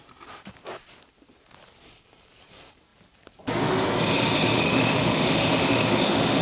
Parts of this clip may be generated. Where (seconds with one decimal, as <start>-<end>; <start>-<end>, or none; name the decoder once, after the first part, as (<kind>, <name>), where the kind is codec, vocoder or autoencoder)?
4.5-6.4 (autoencoder, DAC-VAE)